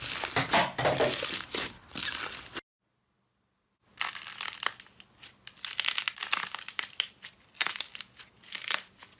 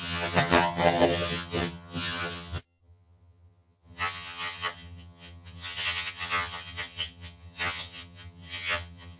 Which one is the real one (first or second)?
first